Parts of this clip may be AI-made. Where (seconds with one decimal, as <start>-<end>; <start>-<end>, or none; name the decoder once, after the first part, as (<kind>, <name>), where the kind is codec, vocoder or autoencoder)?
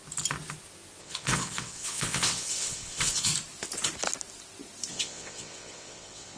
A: 1.0-3.3 (vocoder, WaveNeXt); 4.9-6.4